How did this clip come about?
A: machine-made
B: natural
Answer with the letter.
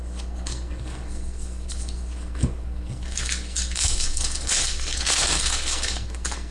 A